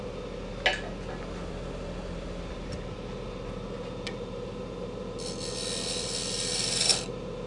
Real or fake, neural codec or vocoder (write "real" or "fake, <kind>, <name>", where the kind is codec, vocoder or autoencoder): real